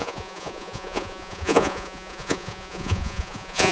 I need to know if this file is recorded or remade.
remade